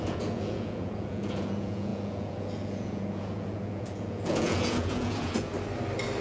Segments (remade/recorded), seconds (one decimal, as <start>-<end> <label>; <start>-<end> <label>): 0.0-5.5 remade; 5.5-6.2 recorded